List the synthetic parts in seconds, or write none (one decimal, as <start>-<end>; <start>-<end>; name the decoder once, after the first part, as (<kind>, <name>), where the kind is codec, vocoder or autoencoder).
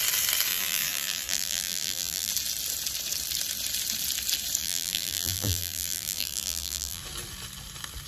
0.5-2.3 (vocoder, BigVGAN v2); 4.6-7.0